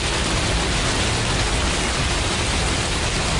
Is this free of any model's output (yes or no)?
yes